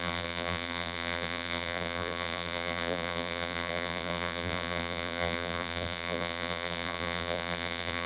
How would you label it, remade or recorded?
remade